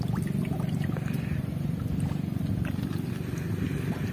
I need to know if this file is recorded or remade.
recorded